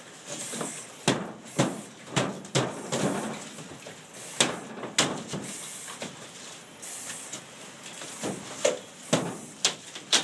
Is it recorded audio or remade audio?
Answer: recorded